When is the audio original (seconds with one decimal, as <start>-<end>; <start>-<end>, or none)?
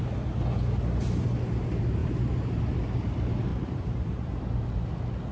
0.0-2.0; 2.6-3.5; 4.4-5.3